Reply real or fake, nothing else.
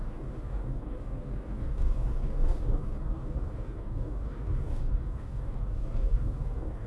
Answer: fake